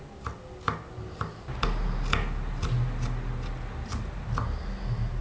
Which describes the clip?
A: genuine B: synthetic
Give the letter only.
A